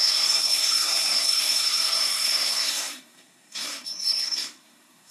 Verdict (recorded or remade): remade